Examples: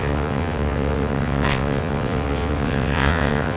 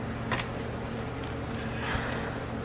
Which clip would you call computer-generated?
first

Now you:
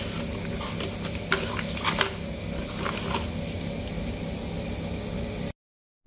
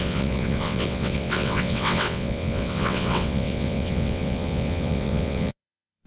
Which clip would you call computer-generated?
second